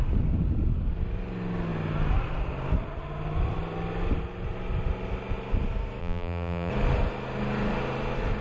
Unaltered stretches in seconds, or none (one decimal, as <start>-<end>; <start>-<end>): 0.0-6.0; 6.7-8.4

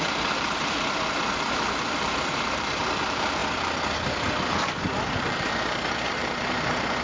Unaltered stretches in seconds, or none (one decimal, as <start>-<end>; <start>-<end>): 3.4-4.8

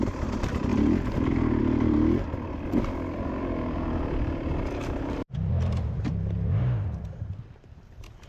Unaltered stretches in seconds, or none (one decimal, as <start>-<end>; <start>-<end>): 0.7-1.6

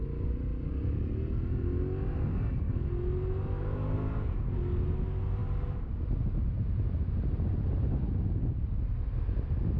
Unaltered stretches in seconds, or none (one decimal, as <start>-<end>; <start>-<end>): 0.0-9.8